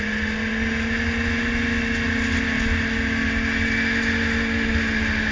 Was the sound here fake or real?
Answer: real